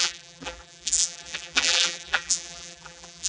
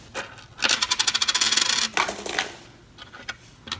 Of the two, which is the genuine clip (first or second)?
second